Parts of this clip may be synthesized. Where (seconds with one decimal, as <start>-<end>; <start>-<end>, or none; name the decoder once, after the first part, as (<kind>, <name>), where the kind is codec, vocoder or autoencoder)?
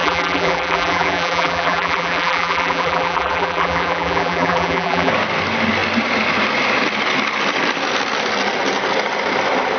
0.0-5.1 (vocoder, BigVGAN v2)